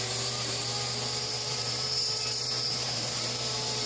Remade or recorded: remade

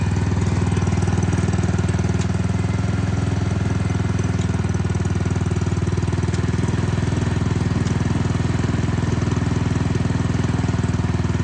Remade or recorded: recorded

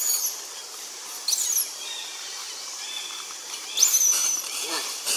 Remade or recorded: remade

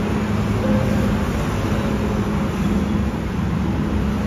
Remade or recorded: recorded